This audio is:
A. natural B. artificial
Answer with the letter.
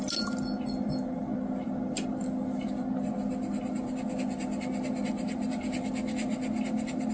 A